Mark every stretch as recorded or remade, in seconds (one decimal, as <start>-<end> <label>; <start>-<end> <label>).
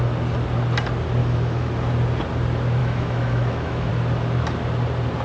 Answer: 0.0-1.2 recorded; 1.2-1.7 remade; 1.7-2.8 recorded; 2.8-3.9 remade; 3.9-5.2 recorded